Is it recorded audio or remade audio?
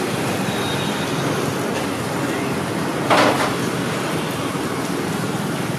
recorded